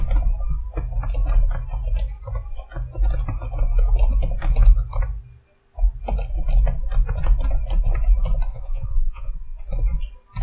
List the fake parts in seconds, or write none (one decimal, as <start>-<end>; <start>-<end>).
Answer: 8.5-9.6